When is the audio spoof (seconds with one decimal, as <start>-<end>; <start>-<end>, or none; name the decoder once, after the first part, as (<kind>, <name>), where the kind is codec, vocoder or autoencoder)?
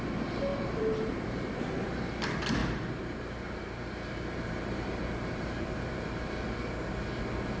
0.5-2.1 (vocoder, BigVGAN v2); 2.6-6.9